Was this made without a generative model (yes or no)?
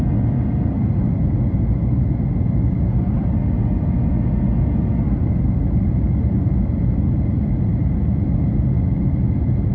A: yes